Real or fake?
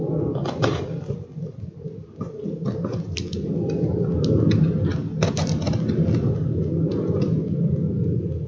real